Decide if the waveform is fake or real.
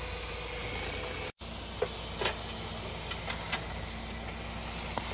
real